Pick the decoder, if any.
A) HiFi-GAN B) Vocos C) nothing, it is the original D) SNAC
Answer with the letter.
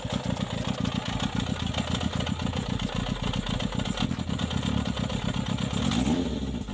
C